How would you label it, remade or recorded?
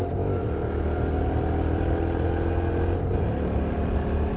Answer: recorded